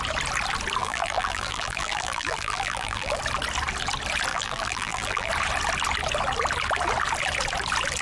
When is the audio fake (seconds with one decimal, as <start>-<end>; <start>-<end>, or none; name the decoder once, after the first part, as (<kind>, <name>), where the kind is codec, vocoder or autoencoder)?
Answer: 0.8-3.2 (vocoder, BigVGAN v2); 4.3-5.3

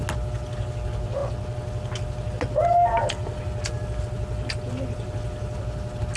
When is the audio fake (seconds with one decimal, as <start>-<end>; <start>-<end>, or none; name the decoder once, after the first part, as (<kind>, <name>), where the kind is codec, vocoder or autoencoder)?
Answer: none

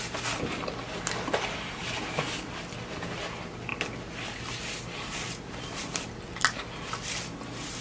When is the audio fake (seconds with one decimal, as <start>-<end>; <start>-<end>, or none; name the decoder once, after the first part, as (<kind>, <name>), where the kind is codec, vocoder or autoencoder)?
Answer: 3.7-6.0 (vocoder, BigVGAN v2)

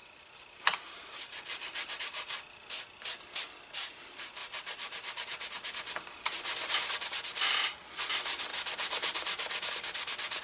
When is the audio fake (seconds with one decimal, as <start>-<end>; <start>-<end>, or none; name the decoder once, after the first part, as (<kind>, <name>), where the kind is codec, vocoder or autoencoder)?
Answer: 0.0-2.0 (vocoder, BigVGAN v2)

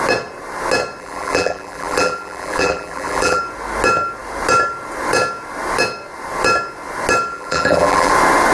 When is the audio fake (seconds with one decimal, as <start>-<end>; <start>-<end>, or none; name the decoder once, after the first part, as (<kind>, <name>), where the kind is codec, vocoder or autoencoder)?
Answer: 1.0-3.4 (vocoder, BigVGAN v2); 7.3-8.1

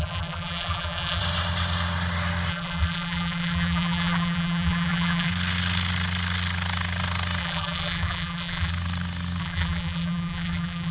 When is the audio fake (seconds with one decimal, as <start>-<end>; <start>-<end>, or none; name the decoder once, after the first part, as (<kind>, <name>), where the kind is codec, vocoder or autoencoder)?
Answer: 0.0-1.2 (vocoder, BigVGAN v2); 2.5-5.3; 7.4-8.7; 9.4-10.9